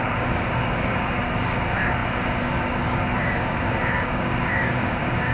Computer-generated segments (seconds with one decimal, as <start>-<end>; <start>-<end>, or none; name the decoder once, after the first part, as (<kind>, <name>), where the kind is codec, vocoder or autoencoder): 0.0-5.3 (codec, DAC)